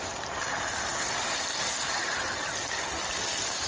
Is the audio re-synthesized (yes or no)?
no